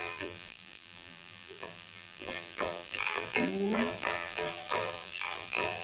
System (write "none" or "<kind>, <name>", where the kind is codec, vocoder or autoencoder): vocoder, BigVGAN v2